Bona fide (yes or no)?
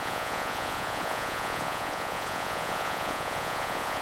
no